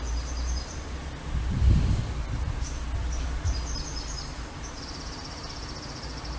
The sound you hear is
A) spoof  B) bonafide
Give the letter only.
B